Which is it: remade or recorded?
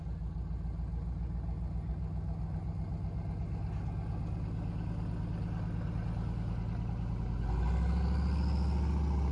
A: recorded